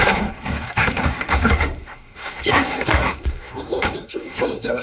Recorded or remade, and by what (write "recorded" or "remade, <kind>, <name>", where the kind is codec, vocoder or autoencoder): remade, codec, SNAC